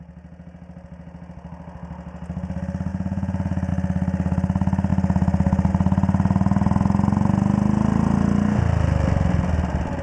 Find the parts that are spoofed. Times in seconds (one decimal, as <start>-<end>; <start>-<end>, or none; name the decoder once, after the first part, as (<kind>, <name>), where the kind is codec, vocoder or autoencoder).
2.9-3.7 (vocoder, Vocos)